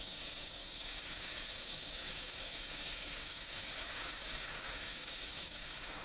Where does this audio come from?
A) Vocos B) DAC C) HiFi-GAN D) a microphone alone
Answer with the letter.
B